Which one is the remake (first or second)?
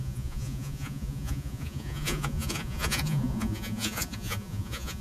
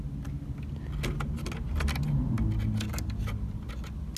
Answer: first